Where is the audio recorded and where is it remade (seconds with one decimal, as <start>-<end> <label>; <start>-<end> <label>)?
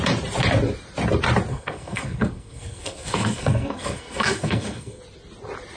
0.0-1.5 recorded; 1.5-5.0 remade; 5.0-5.8 recorded